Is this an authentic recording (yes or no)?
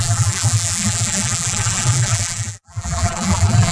no